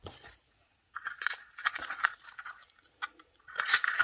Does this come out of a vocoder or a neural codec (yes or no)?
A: yes